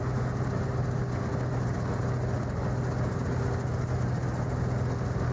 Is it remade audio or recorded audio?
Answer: recorded